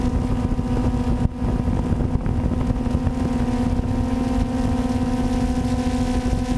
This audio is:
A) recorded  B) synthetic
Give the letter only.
A